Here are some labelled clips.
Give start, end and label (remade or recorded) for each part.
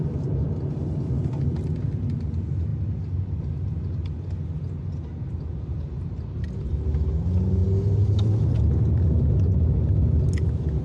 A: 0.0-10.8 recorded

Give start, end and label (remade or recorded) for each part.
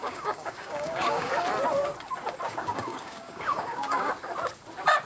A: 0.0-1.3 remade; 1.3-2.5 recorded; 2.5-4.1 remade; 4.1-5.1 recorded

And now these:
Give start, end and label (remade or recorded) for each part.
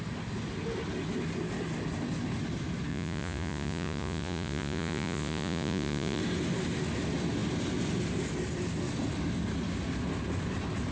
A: 0.0-2.9 recorded; 2.9-6.2 remade; 6.2-10.9 recorded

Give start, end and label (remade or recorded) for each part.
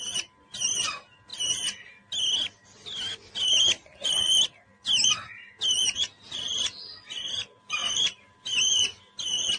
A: 0.0-9.6 recorded